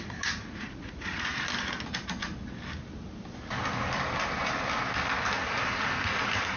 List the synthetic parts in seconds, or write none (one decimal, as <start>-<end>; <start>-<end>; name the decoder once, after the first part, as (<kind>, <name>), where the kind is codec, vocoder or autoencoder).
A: 0.4-1.4 (vocoder, Vocos)